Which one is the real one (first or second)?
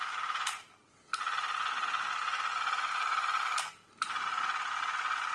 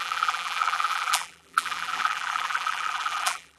first